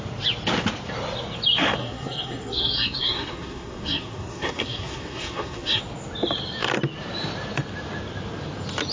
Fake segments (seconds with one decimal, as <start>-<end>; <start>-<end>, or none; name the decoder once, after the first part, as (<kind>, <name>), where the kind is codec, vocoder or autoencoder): 1.8-5.8 (codec, SNAC)